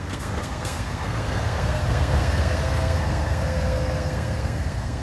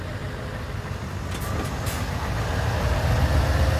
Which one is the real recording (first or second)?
second